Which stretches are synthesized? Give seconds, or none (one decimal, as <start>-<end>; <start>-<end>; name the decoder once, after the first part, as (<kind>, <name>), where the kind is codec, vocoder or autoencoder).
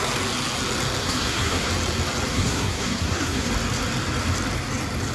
1.0-1.7 (codec, SNAC); 2.3-3.5